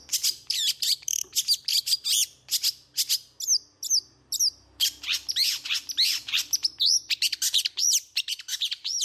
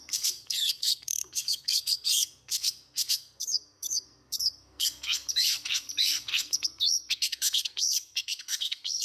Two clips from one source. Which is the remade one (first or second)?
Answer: second